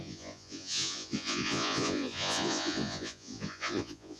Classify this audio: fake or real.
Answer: fake